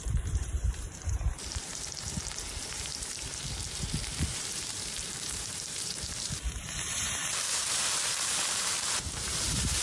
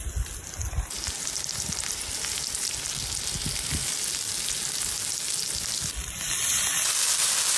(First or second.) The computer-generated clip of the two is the first